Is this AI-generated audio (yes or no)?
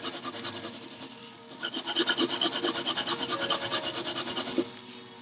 no